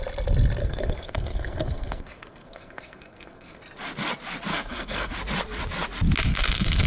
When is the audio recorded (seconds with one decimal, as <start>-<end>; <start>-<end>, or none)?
0.0-0.6; 3.6-4.5; 5.1-6.3